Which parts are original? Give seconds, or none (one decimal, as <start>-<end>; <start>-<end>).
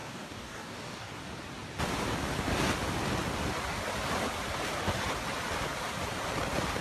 1.2-6.8